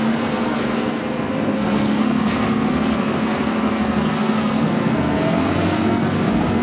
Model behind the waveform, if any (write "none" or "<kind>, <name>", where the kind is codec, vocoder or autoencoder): codec, SNAC